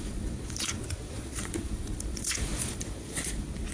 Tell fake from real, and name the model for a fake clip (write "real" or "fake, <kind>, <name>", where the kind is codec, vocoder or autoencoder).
fake, vocoder, Vocos